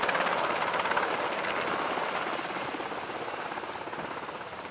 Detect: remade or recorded recorded